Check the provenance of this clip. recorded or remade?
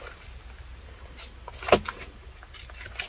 recorded